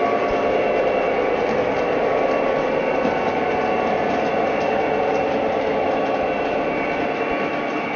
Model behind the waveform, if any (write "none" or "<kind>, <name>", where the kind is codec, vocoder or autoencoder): none